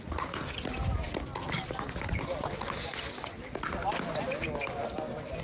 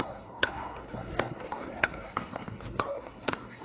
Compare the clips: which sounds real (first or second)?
first